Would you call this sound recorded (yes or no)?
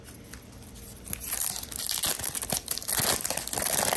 yes